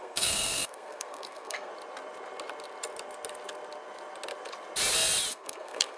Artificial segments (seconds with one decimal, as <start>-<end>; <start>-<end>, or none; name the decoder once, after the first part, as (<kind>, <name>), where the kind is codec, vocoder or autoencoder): 0.0-1.7 (codec, SNAC); 5.3-6.0